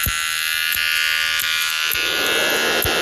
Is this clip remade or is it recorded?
recorded